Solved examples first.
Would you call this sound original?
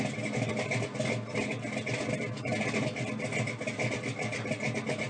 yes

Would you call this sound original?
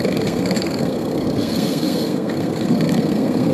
no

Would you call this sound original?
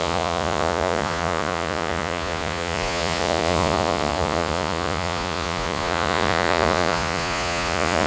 no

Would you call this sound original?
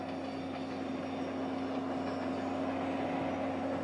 yes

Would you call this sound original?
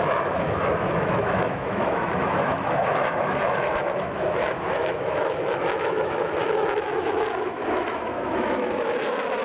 no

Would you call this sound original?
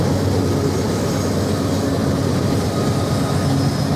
yes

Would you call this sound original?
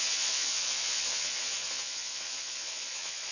no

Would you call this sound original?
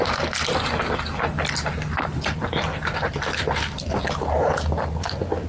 yes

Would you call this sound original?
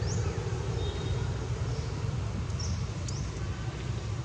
yes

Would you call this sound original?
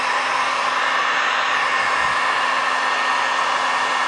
yes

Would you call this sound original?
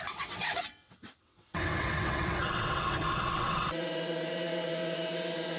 no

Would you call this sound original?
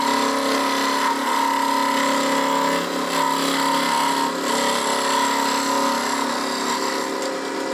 yes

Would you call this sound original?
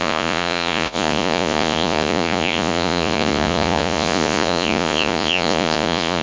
no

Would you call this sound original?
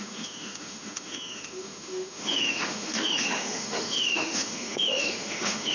no